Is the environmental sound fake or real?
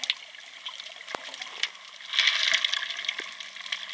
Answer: real